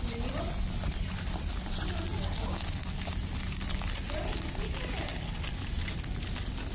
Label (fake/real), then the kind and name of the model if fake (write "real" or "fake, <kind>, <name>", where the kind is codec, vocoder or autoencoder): real